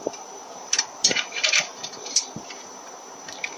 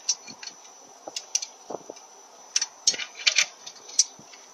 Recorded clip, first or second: second